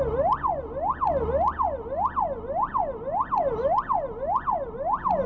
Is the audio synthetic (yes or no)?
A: no